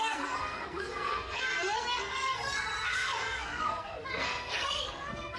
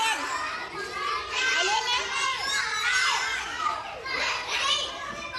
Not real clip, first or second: first